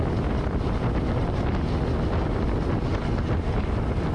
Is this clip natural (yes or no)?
yes